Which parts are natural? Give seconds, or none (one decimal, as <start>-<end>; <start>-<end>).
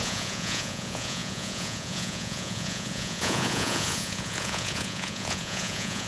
none